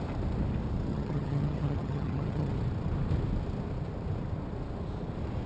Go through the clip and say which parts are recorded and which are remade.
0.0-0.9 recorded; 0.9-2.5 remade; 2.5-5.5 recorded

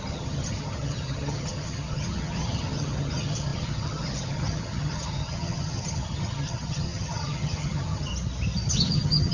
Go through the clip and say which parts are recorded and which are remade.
0.0-8.1 remade; 8.1-8.7 recorded; 8.7-9.3 remade

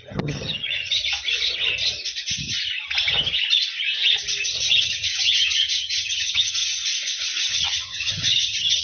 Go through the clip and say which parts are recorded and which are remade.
0.0-1.0 remade; 1.0-4.8 recorded; 4.8-6.6 remade; 6.6-7.5 recorded; 7.5-8.8 remade

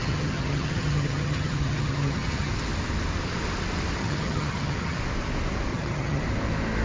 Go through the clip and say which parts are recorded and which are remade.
0.0-2.5 remade; 2.5-4.0 recorded; 4.0-5.0 remade; 5.0-5.7 recorded; 5.7-6.2 remade; 6.2-6.8 recorded

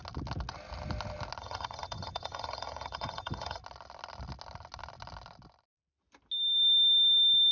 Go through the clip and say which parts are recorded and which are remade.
0.0-1.4 recorded; 1.4-3.6 remade; 3.6-7.5 recorded

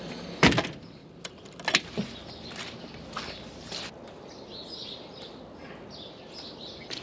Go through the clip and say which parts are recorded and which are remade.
0.0-7.0 recorded

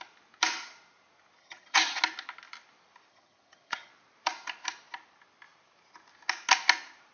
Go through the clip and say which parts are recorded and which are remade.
0.0-1.4 recorded; 1.4-2.0 remade; 2.0-3.1 recorded; 3.1-3.9 remade; 3.9-7.1 recorded